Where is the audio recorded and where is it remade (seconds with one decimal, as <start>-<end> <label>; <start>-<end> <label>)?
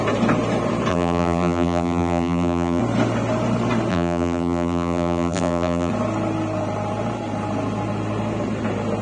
0.0-0.9 recorded; 0.9-2.8 remade; 2.8-3.9 recorded; 3.9-5.9 remade; 5.9-9.0 recorded